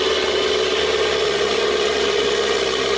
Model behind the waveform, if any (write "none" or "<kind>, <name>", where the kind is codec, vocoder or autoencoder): none